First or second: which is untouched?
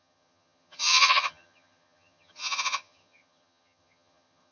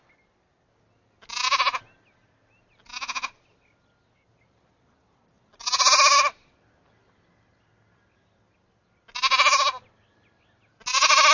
second